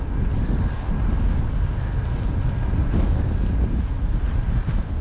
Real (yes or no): yes